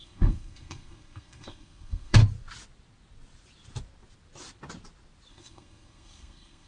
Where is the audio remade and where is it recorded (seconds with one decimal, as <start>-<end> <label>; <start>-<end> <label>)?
0.0-2.2 remade; 2.2-5.3 recorded; 5.3-6.7 remade